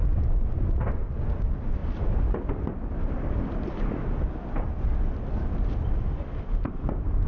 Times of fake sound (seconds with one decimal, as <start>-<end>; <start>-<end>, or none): none